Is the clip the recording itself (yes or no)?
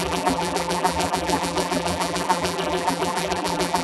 no